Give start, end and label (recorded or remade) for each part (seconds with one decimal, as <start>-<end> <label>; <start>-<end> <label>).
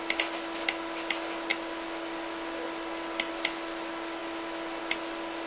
0.0-5.5 recorded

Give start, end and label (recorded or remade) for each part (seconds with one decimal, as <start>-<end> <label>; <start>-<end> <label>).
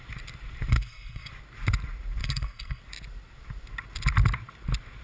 0.0-0.7 recorded; 0.7-1.3 remade; 1.3-2.2 recorded; 2.2-2.8 remade; 2.8-5.0 recorded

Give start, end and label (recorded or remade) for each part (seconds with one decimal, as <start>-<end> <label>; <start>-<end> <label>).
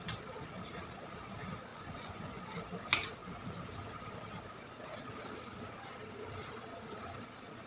0.0-1.7 recorded; 1.7-2.4 remade; 2.4-7.7 recorded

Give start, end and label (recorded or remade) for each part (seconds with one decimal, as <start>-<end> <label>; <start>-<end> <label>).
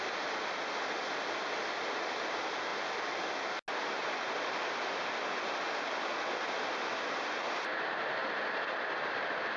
0.0-8.2 recorded; 8.2-9.0 remade; 9.0-9.6 recorded